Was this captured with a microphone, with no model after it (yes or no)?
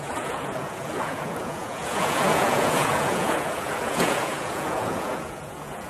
no